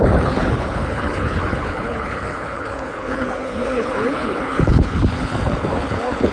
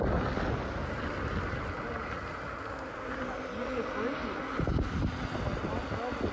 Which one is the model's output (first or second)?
first